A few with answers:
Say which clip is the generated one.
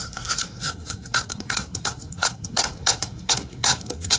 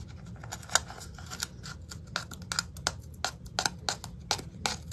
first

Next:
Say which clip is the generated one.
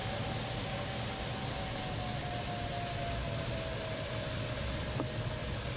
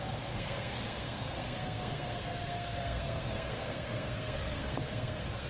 second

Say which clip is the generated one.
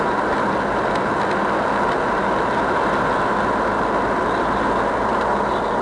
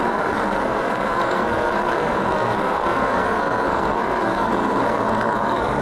second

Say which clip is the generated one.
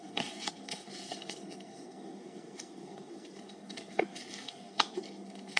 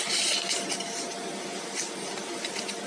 first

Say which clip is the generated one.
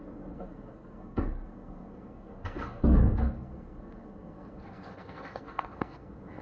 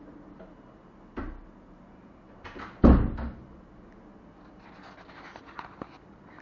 first